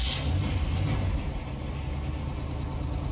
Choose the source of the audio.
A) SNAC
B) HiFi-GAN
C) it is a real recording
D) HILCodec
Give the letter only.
C